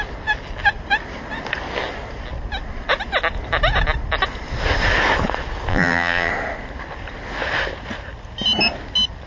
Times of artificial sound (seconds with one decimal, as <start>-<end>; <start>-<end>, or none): 5.7-6.3